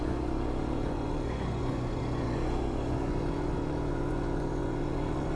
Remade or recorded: remade